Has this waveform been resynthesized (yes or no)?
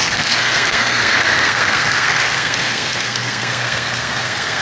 yes